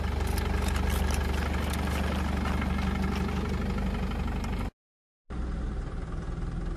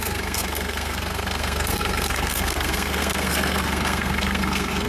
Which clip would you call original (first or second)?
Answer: first